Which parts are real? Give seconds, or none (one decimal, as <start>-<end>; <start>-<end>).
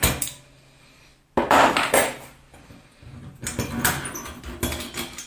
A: 0.0-5.3